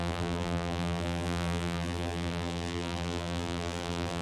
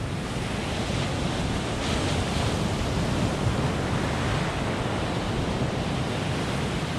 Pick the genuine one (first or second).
second